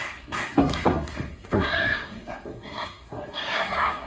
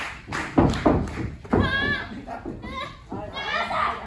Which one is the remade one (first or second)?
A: first